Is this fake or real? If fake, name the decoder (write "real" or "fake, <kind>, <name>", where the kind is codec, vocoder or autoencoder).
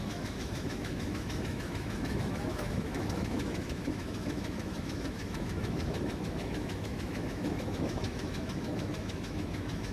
fake, autoencoder, DAC-VAE